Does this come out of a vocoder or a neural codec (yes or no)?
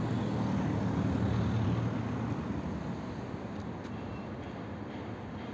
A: no